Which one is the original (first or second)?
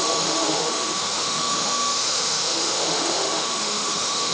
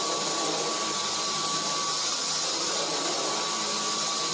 second